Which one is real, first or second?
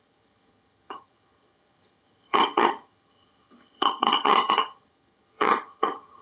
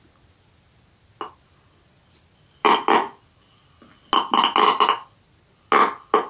second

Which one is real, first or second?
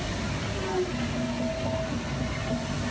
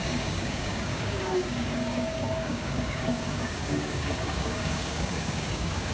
first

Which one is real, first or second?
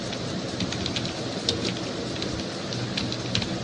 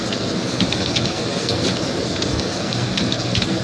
first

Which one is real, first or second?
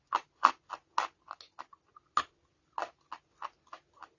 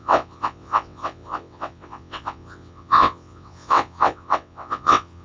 first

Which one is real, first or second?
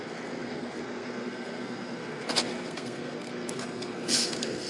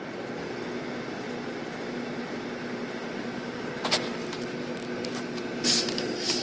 second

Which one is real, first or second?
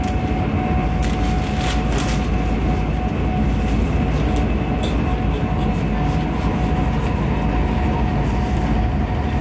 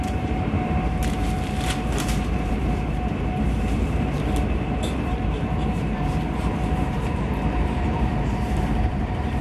first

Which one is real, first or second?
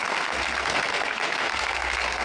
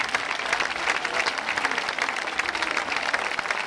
second